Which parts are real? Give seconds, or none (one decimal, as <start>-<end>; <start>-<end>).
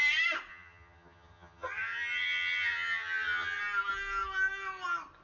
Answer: 0.0-0.5; 3.6-5.2